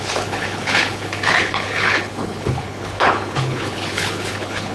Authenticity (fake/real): fake